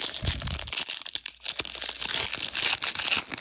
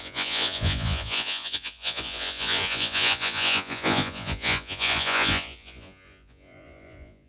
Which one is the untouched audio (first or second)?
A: first